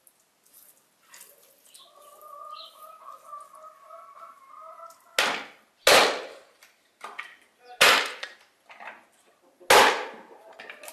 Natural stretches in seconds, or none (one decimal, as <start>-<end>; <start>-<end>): 0.0-10.9